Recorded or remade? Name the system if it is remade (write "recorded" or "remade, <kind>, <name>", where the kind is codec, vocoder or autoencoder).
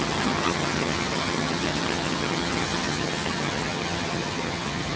remade, vocoder, HiFi-GAN